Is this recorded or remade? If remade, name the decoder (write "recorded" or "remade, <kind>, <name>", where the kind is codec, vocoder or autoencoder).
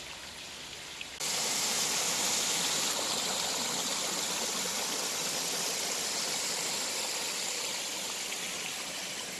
recorded